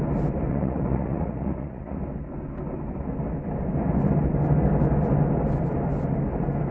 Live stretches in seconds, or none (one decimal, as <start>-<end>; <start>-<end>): 0.0-0.5; 2.0-6.7